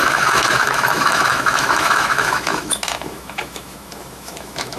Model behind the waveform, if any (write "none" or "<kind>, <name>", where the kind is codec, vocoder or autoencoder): autoencoder, DAC-VAE